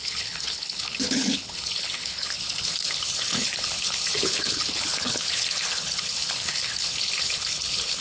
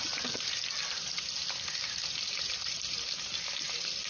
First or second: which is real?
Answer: second